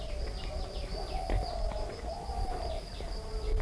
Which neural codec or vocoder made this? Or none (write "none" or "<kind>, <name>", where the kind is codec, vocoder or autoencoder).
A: none